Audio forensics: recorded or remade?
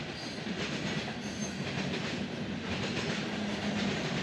remade